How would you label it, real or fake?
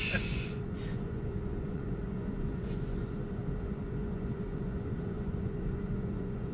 fake